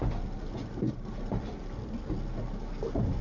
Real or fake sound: real